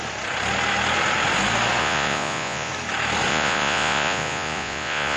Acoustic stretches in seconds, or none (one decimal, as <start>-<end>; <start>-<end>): 0.0-1.8; 2.7-3.3